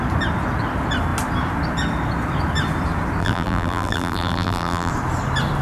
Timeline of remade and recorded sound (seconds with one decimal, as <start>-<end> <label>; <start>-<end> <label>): 0.0-3.2 recorded; 3.2-4.9 remade; 4.9-5.6 recorded